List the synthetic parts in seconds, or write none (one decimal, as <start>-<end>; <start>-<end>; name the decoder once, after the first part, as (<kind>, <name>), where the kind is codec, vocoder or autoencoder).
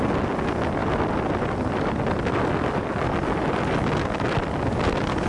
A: none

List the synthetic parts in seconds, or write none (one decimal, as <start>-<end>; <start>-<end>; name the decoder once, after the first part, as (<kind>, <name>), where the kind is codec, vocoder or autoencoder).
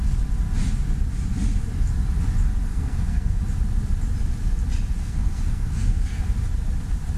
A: 2.7-3.4 (codec, SNAC); 5.0-6.2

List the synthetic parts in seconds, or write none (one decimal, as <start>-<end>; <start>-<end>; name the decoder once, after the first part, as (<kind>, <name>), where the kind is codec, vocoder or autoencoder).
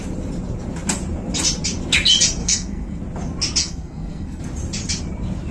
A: 2.4-3.0 (codec, SNAC); 3.6-4.4